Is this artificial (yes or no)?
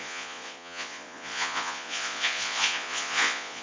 yes